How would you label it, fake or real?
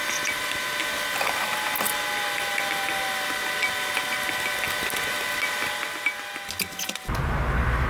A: real